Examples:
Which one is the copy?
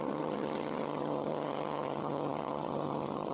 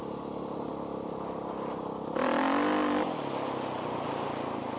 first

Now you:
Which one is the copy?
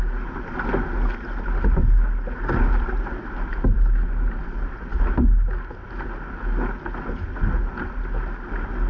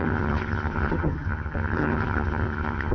second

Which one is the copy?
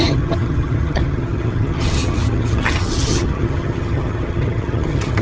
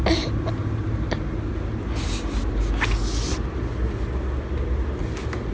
first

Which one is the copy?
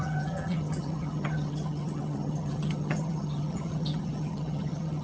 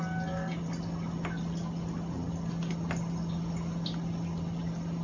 first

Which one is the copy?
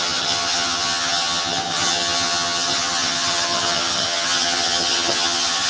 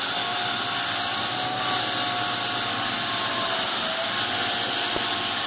first